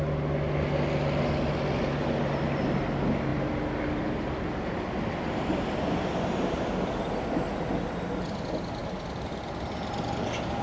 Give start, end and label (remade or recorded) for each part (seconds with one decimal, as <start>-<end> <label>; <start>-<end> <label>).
0.0-10.6 recorded